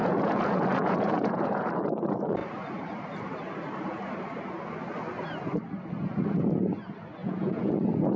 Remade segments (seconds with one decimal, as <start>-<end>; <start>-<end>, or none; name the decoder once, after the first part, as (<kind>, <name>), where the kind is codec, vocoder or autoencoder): 0.0-1.7 (vocoder, Vocos); 7.2-8.2